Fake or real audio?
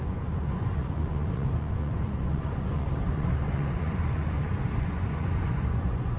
fake